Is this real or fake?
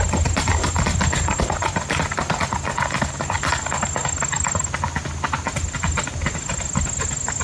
real